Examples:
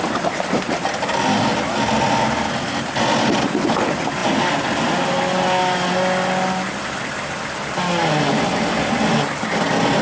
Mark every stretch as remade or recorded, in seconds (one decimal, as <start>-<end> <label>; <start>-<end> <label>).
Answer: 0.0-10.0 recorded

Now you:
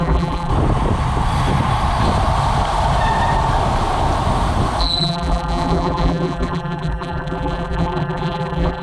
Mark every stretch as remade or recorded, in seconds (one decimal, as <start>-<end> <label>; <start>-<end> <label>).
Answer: 0.0-0.5 remade; 0.5-4.8 recorded; 4.8-8.8 remade

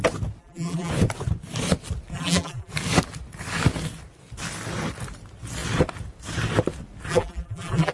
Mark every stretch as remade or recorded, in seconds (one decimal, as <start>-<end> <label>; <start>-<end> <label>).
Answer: 0.0-0.4 recorded; 0.4-0.9 remade; 0.9-2.1 recorded; 2.1-2.7 remade; 2.7-7.1 recorded; 7.1-7.9 remade

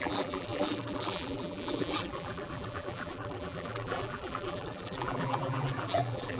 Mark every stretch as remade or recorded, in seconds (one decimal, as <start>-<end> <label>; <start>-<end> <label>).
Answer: 0.0-6.4 remade